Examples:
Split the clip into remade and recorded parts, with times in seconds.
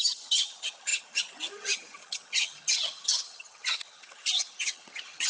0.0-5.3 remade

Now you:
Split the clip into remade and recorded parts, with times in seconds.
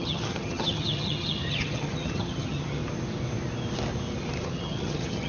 0.0-2.8 remade; 2.8-4.4 recorded; 4.4-5.3 remade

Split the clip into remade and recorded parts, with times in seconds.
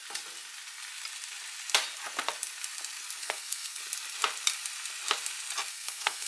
0.0-3.2 recorded; 3.2-3.8 remade; 3.8-5.7 recorded; 5.7-6.3 remade